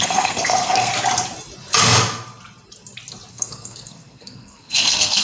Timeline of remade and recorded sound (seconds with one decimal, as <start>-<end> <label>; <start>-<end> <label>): 0.0-0.9 remade; 0.9-3.3 recorded; 3.3-5.2 remade

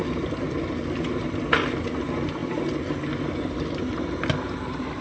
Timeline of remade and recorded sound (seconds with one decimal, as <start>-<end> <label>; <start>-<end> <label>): 0.0-5.0 recorded

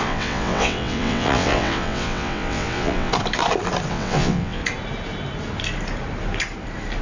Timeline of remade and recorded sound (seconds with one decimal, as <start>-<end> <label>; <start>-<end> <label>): 0.0-3.1 remade; 3.1-3.9 recorded; 3.9-4.6 remade; 4.6-7.0 recorded